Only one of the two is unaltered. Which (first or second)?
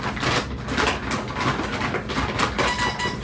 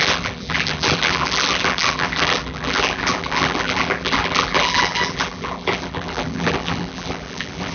first